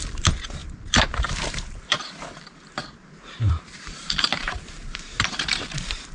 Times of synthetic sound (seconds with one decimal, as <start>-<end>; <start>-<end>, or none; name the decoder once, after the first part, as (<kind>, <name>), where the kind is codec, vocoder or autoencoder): 0.0-6.1 (vocoder, BigVGAN v2)